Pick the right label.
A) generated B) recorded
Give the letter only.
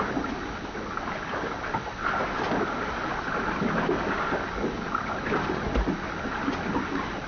B